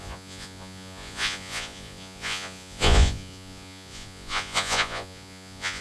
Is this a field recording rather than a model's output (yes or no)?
no